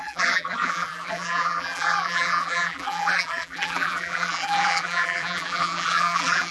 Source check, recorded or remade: remade